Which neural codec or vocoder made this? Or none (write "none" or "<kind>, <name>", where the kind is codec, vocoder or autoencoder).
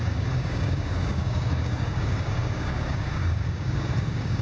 codec, DAC